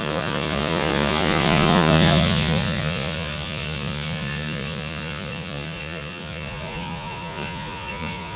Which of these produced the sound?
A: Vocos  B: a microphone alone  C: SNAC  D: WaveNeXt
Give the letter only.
A